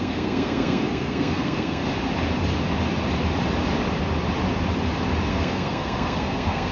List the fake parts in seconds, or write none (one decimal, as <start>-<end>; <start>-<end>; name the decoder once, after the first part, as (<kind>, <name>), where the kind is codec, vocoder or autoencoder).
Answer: 0.0-1.8 (codec, SNAC); 5.3-6.7